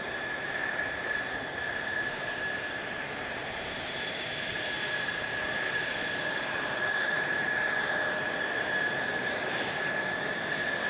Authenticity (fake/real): fake